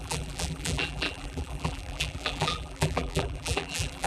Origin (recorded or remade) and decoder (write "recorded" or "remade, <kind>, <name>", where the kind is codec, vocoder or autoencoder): remade, vocoder, BigVGAN v2